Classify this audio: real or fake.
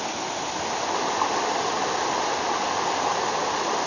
real